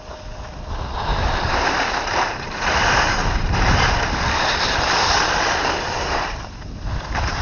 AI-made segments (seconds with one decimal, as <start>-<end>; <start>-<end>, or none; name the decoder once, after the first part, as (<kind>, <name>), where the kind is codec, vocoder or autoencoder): 1.1-4.9 (vocoder, BigVGAN v2)